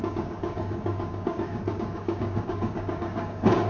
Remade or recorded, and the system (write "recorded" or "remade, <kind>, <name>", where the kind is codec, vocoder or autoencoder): remade, codec, DAC